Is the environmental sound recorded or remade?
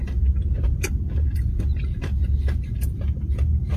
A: remade